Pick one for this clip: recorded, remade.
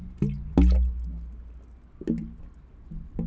recorded